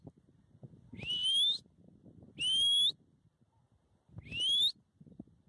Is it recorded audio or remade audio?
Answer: recorded